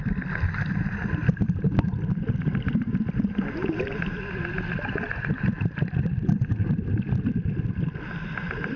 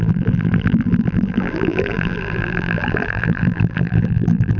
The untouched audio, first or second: first